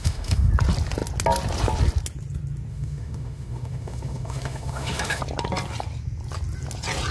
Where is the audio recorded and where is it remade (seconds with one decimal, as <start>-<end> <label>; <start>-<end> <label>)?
0.0-0.5 remade; 0.5-2.7 recorded; 2.7-5.2 remade; 5.2-7.1 recorded